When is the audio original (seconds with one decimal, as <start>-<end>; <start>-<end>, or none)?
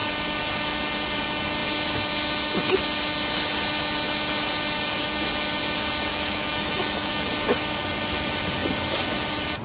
0.0-6.1; 7.3-9.6